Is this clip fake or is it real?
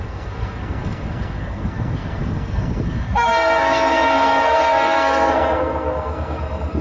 fake